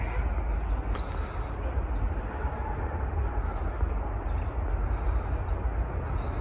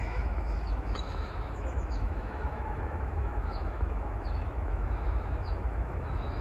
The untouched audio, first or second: first